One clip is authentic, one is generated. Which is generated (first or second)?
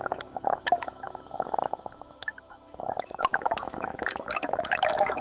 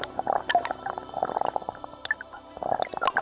first